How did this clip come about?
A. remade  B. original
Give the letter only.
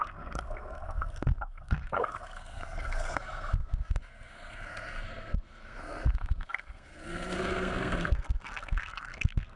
A